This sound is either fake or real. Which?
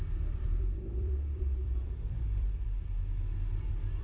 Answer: fake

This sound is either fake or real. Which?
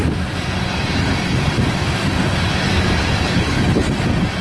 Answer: real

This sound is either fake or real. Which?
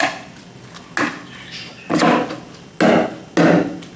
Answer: real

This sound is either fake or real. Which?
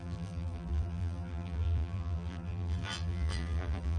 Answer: fake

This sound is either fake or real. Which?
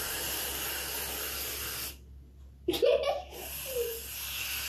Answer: real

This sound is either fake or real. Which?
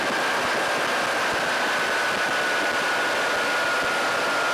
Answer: real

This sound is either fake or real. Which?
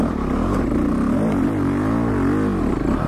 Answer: real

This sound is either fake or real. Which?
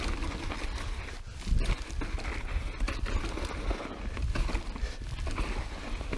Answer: real